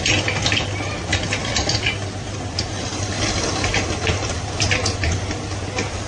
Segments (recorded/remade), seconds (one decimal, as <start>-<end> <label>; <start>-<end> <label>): 0.0-1.1 recorded; 1.1-4.6 remade; 4.6-6.1 recorded

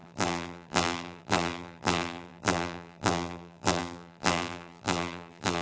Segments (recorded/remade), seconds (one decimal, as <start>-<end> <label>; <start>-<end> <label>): 0.0-5.6 remade